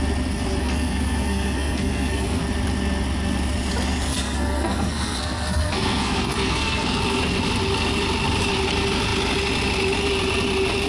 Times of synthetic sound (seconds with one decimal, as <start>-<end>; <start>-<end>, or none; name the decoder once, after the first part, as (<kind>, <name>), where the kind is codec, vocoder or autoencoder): 0.6-2.4 (codec, SNAC); 4.1-7.0